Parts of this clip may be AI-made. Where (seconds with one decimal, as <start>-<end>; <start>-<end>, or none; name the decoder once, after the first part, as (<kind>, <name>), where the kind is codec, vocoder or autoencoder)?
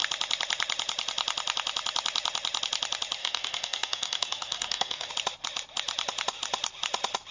3.2-5.1 (codec, SNAC)